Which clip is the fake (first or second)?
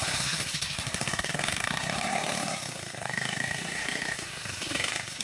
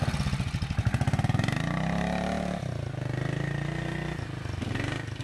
first